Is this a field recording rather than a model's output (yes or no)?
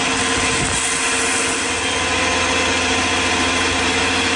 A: yes